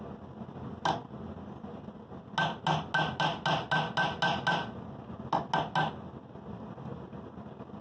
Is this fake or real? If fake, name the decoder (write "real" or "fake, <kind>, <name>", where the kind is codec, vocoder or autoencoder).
real